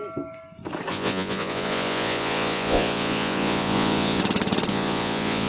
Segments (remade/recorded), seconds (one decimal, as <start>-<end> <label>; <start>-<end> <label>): 0.0-0.9 recorded; 0.9-4.2 remade; 4.2-4.7 recorded; 4.7-5.5 remade